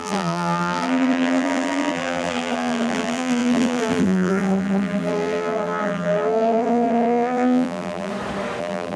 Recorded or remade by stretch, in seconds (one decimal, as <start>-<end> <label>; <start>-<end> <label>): 0.0-8.1 remade; 8.1-8.6 recorded; 8.6-9.0 remade

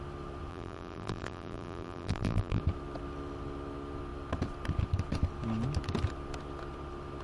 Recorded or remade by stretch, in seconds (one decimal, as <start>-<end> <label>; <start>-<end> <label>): 0.0-0.5 recorded; 0.5-2.6 remade; 2.6-7.2 recorded

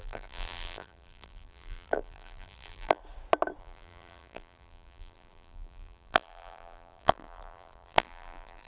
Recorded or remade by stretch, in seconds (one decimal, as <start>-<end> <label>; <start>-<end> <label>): 0.0-3.0 remade; 3.0-3.6 recorded; 3.6-8.7 remade

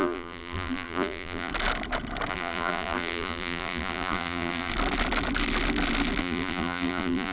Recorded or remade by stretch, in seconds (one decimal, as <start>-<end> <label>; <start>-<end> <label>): 0.0-1.5 remade; 1.5-2.3 recorded; 2.3-4.7 remade; 4.7-6.2 recorded; 6.2-7.3 remade

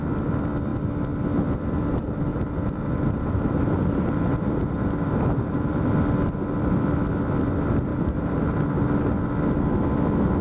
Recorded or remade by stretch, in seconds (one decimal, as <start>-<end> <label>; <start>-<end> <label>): 0.0-2.3 recorded; 2.3-5.9 remade; 5.9-7.9 recorded; 7.9-8.5 remade; 8.5-10.4 recorded

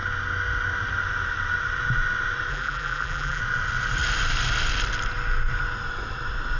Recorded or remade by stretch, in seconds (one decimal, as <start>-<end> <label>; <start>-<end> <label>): 0.0-2.5 recorded; 2.5-3.4 remade; 3.4-6.6 recorded

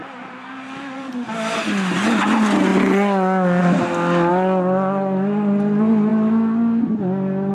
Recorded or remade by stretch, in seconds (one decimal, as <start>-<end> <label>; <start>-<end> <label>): 0.0-1.1 remade; 1.1-7.5 recorded